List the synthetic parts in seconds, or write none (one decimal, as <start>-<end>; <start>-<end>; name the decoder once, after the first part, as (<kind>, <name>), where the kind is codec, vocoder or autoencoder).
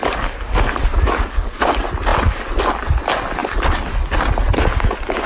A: 0.0-1.7 (codec, DAC)